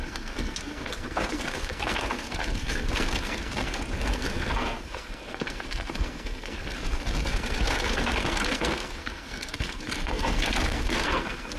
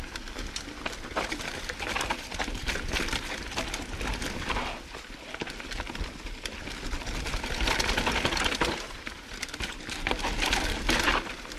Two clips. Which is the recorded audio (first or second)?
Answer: second